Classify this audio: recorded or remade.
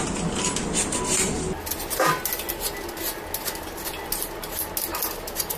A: recorded